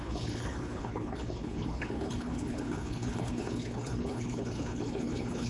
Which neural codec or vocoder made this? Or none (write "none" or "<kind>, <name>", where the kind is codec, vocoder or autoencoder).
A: codec, HILCodec